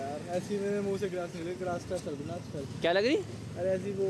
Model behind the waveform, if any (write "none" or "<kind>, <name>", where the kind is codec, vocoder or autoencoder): none